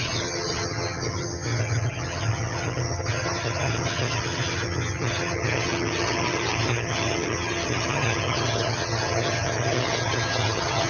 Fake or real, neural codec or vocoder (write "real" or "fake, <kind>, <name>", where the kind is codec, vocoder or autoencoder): fake, vocoder, HiFi-GAN